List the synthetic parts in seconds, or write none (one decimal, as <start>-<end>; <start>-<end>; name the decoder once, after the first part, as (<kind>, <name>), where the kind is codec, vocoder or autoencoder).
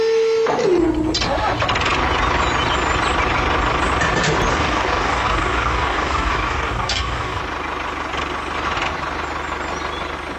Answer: 4.5-7.4 (codec, DAC)